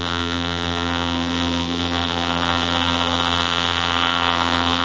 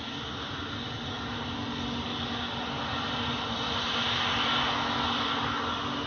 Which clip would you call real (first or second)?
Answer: second